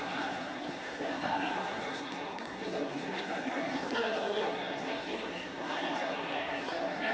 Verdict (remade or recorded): remade